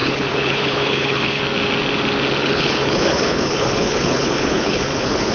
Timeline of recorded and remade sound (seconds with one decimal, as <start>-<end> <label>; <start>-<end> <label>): 0.0-1.4 remade; 1.4-2.4 recorded; 2.4-5.3 remade